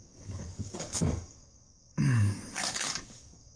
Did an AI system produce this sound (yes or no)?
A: yes